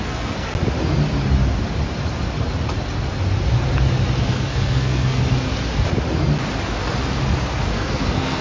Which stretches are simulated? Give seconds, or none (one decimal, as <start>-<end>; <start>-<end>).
0.0-0.5; 4.2-5.2; 7.7-8.4